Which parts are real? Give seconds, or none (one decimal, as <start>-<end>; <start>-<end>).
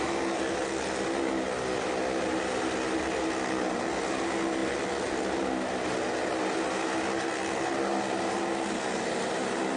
0.0-9.8